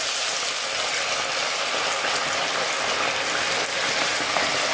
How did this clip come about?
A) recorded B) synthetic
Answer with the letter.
A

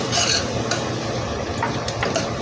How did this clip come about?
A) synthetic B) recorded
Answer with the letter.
B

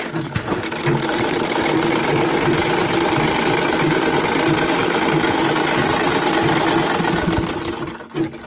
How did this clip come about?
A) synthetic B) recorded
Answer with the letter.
B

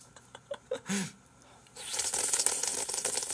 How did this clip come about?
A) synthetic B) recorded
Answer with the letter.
B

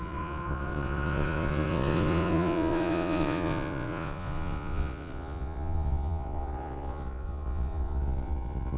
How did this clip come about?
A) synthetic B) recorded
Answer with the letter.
A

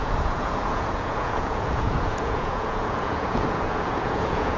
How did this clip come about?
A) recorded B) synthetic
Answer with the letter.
B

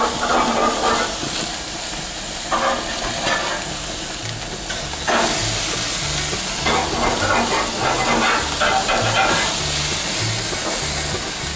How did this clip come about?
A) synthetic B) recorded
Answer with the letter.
B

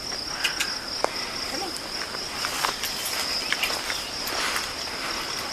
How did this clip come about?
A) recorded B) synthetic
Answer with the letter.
A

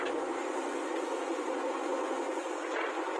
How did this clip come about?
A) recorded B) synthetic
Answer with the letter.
B